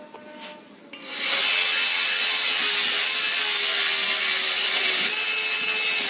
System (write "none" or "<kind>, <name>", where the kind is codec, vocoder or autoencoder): none